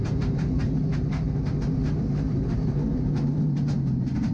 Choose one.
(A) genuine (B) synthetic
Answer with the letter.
B